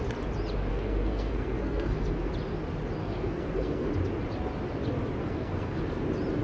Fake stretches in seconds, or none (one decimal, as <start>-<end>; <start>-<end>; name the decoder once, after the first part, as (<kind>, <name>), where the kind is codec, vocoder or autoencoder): 0.7-2.3 (codec, SNAC); 3.0-3.9; 5.2-5.8